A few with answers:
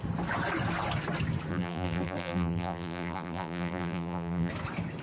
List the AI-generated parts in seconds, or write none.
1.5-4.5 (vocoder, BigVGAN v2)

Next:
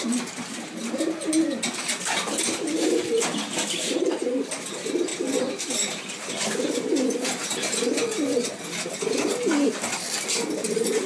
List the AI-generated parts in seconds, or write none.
none

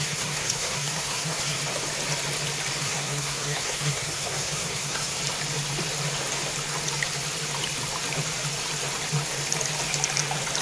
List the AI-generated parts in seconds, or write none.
0.0-1.6 (codec, SNAC); 2.8-5.2